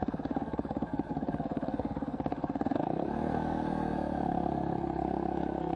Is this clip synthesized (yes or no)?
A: yes